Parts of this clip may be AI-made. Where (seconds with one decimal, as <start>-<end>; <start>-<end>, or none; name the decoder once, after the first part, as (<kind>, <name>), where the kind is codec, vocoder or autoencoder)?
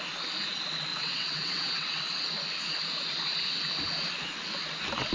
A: 0.9-2.0 (vocoder, WaveNeXt)